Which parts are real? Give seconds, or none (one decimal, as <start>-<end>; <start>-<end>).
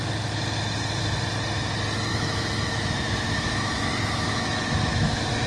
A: 0.0-2.1